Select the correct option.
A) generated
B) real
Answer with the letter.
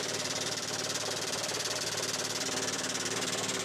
A